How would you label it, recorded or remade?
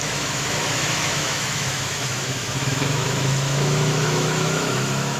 remade